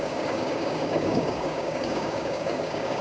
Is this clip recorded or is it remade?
remade